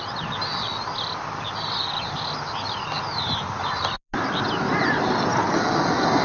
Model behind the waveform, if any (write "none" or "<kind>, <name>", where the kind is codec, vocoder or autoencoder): none